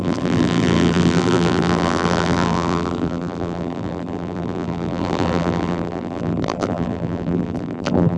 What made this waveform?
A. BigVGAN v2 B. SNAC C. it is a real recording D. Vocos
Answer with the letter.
A